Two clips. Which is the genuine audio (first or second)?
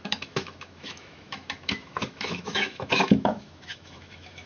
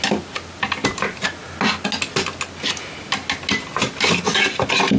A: second